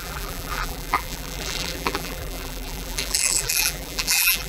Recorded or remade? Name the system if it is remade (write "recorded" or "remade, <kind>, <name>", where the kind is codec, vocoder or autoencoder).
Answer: remade, vocoder, BigVGAN v2